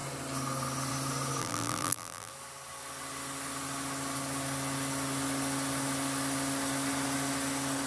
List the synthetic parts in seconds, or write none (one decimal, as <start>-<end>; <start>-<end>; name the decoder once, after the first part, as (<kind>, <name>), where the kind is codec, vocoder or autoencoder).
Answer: 1.4-2.3 (vocoder, BigVGAN v2)